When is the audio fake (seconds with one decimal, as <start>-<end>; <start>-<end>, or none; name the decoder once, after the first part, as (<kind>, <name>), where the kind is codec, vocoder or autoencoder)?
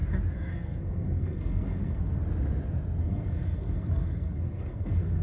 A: 0.5-2.2 (codec, SNAC); 3.0-5.2